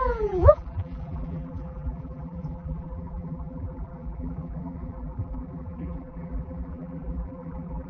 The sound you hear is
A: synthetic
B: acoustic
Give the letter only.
A